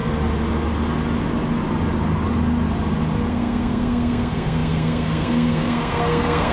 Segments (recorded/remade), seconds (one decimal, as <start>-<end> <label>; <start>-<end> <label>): 0.0-3.3 recorded; 3.3-6.5 remade